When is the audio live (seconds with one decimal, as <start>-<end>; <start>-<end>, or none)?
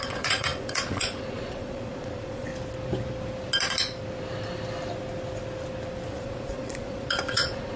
2.5-6.1